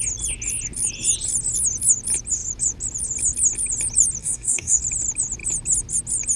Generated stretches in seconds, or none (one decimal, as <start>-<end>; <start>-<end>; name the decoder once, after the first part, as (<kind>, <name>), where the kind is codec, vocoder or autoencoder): 4.2-4.8 (codec, DAC)